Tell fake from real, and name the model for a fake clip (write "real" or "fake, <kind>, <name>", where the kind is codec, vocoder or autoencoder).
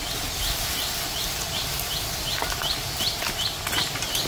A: real